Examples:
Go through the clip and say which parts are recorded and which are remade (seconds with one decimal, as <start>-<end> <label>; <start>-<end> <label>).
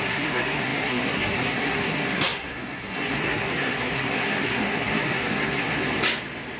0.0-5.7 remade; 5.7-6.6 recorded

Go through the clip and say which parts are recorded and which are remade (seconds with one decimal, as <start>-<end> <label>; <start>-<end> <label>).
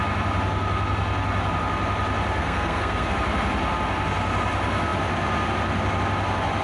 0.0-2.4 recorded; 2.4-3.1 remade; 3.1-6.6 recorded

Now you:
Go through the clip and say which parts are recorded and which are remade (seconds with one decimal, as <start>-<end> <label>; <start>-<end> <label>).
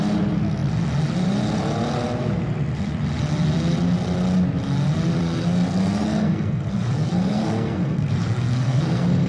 0.0-5.2 recorded; 5.2-9.3 remade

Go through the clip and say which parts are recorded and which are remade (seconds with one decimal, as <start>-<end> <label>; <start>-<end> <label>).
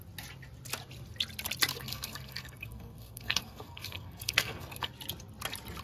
0.0-1.7 recorded; 1.7-4.9 remade; 4.9-5.8 recorded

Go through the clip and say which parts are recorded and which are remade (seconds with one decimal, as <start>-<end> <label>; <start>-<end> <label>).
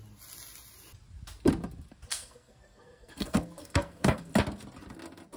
0.0-2.1 recorded; 2.1-4.3 remade; 4.3-5.4 recorded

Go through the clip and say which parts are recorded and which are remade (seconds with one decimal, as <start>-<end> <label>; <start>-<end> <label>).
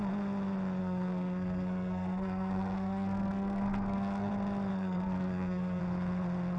0.0-0.8 recorded; 0.8-4.3 remade; 4.3-4.7 recorded; 4.7-5.8 remade; 5.8-6.6 recorded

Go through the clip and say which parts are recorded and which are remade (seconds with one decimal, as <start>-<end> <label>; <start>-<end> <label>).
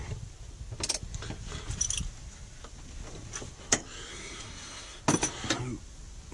0.0-4.1 recorded; 4.1-5.0 remade; 5.0-6.3 recorded